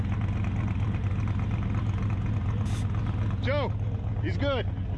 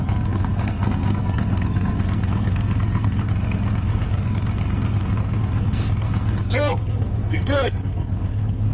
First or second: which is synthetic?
second